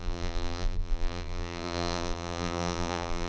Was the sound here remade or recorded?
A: remade